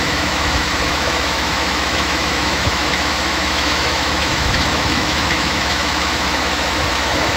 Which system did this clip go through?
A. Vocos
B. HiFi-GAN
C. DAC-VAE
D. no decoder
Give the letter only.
C